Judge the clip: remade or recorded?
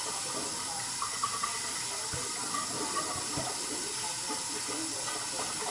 recorded